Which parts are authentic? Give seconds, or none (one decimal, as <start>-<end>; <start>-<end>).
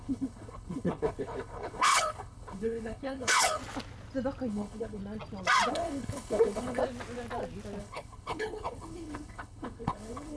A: 3.6-4.5; 5.0-5.7; 6.8-7.8